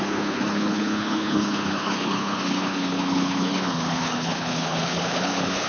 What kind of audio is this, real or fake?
fake